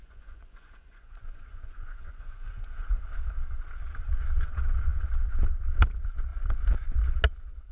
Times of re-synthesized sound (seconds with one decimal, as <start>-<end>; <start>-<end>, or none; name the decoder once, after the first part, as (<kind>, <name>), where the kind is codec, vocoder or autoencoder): 0.0-3.0 (vocoder, Vocos)